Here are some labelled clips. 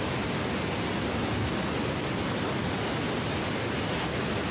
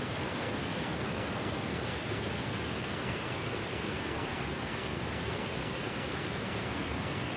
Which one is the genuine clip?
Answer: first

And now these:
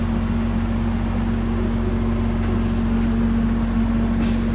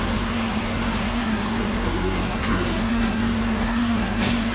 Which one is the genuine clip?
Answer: first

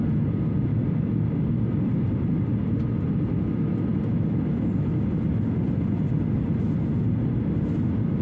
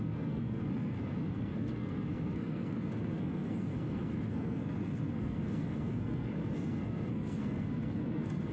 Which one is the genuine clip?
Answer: first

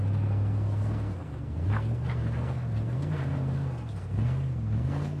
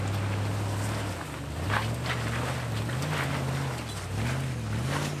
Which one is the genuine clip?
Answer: second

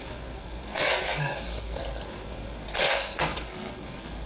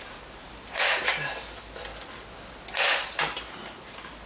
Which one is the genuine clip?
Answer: second